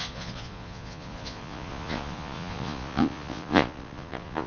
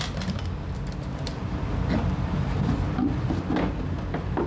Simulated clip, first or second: first